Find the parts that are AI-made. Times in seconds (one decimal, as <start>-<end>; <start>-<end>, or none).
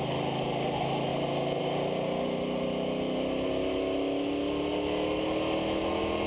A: none